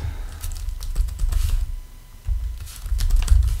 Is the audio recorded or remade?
recorded